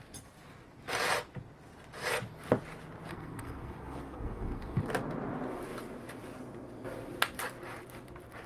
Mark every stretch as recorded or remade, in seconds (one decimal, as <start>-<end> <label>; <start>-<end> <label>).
0.0-3.1 recorded; 3.1-4.8 remade; 4.8-8.5 recorded